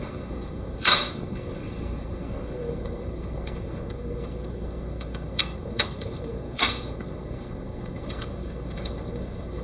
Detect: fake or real fake